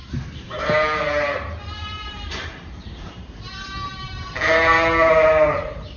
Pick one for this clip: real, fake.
fake